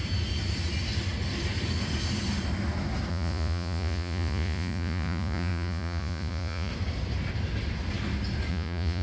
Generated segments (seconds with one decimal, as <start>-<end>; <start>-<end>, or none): 3.1-6.7; 8.5-9.0